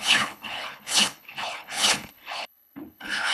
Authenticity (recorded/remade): remade